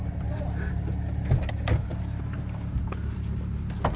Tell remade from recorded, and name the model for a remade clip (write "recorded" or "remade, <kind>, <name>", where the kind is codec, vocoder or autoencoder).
recorded